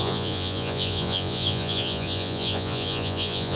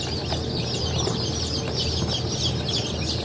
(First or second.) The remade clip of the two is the first